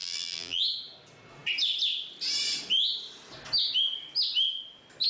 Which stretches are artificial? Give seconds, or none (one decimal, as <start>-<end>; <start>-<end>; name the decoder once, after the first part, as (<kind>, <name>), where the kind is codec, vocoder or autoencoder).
0.0-0.6 (vocoder, BigVGAN v2)